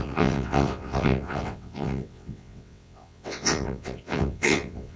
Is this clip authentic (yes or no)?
no